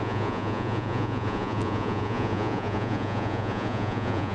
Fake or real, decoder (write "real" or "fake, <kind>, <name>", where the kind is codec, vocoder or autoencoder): fake, vocoder, Vocos